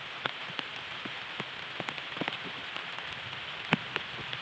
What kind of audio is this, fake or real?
real